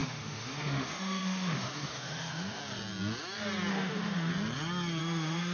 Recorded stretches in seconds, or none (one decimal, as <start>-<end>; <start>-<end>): 2.6-3.7; 4.3-5.0